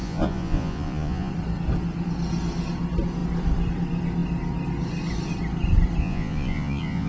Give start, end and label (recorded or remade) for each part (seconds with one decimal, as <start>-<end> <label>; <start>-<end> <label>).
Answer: 0.0-1.3 remade; 1.3-6.0 recorded; 6.0-7.1 remade